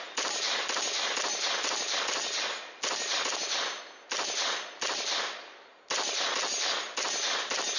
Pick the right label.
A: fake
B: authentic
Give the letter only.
B